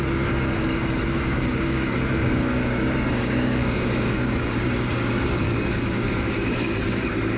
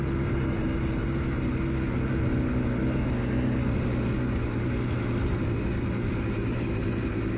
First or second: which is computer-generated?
first